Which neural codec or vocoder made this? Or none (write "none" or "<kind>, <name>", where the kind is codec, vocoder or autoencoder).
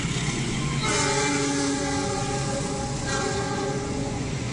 vocoder, Vocos